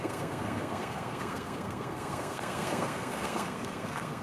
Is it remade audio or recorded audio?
remade